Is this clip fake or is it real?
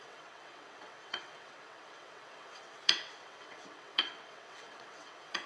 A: fake